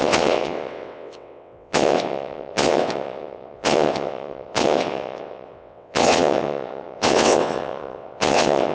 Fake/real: fake